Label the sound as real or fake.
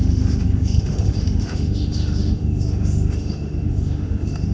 fake